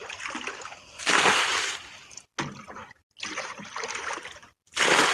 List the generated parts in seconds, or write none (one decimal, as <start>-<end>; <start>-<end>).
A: 1.5-2.2; 2.8-4.0